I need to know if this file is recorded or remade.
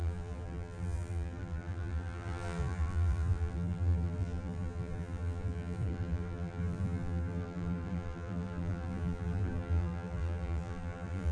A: remade